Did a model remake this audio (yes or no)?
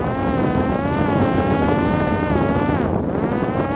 no